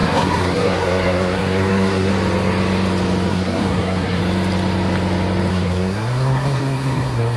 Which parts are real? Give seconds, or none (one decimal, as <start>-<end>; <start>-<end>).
2.1-3.3; 4.2-5.5